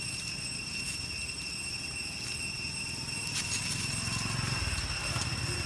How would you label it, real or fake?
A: real